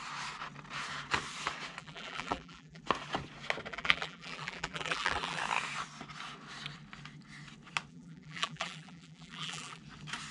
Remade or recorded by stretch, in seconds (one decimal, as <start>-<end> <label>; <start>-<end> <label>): 0.0-1.8 recorded; 1.8-2.8 remade; 2.8-3.7 recorded; 3.7-5.4 remade; 5.4-7.9 recorded; 7.9-9.8 remade; 9.8-10.3 recorded